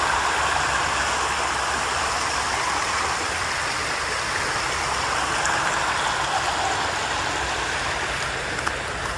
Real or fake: real